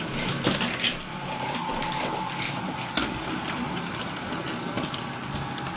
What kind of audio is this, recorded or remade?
recorded